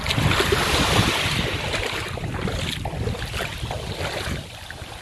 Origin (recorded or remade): recorded